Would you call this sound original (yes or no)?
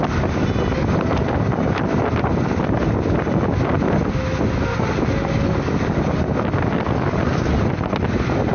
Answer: yes